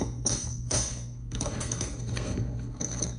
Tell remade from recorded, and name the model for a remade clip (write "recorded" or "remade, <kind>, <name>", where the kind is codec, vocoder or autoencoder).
remade, codec, SNAC